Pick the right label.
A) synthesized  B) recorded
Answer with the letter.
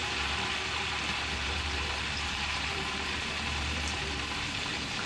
A